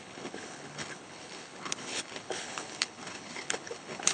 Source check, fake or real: fake